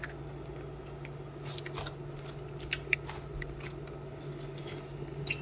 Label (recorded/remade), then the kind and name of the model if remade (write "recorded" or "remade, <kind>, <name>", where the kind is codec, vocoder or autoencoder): recorded